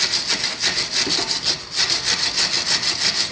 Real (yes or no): yes